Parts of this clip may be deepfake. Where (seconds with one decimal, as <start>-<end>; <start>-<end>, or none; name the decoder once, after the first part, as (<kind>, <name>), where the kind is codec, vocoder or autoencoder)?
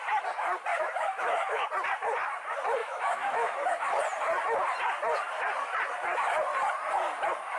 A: 0.7-1.7 (autoencoder, DAC-VAE); 2.8-4.0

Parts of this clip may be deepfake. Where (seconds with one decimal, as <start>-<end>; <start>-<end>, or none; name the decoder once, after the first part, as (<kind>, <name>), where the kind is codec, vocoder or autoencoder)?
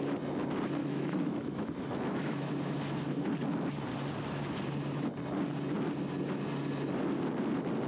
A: 0.8-2.5 (autoencoder, DAC-VAE)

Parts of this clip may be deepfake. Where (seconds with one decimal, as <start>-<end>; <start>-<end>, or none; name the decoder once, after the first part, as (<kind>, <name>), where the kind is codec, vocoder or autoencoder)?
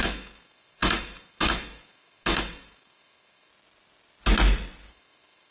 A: 0.0-3.5 (autoencoder, DAC-VAE); 4.9-5.5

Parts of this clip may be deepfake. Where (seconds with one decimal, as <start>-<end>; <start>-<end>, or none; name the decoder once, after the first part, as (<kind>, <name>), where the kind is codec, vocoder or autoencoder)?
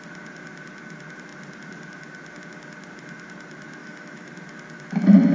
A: 3.8-4.3 (autoencoder, DAC-VAE)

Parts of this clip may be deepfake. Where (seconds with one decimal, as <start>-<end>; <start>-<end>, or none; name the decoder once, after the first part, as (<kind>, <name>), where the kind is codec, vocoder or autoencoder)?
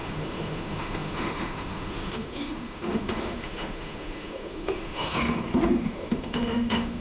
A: 0.0-7.0 (autoencoder, DAC-VAE)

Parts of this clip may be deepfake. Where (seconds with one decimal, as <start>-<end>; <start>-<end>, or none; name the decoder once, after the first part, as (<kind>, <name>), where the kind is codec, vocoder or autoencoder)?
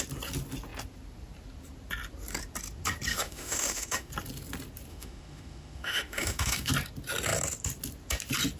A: 3.1-4.1 (autoencoder, DAC-VAE); 4.9-6.7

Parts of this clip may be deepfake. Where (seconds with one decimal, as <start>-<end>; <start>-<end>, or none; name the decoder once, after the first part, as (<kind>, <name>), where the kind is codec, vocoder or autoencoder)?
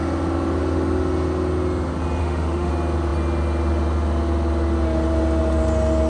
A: 2.2-2.7 (autoencoder, DAC-VAE)